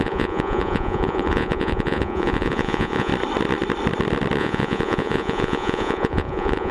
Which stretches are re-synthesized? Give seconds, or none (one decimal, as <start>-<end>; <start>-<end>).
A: 0.0-3.1; 4.4-6.7